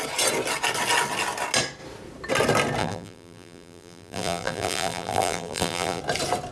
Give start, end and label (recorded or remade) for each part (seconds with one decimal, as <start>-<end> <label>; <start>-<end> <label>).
0.0-2.8 recorded; 2.8-6.0 remade; 6.0-6.5 recorded